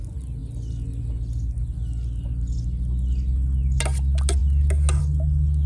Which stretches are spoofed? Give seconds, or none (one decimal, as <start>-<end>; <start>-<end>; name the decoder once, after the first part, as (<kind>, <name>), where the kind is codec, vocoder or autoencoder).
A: none